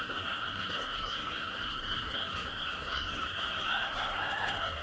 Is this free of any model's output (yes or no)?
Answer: no